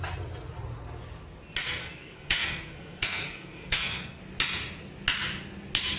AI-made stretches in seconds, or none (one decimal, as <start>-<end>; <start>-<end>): 1.8-4.2